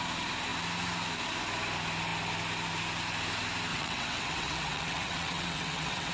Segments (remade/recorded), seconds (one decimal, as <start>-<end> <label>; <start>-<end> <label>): 0.0-3.7 recorded; 3.7-6.1 remade